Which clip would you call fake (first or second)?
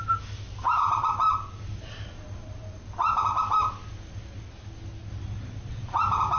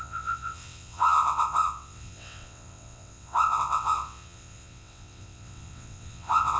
second